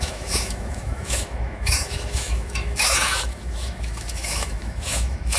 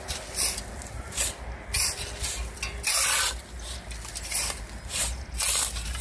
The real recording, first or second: second